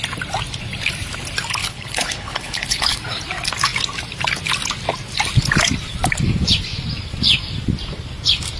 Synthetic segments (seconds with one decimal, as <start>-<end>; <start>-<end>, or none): 1.6-3.0

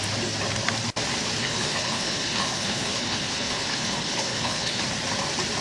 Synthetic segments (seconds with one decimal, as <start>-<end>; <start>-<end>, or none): 1.4-4.8

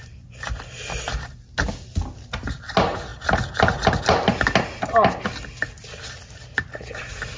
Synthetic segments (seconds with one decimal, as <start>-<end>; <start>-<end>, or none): none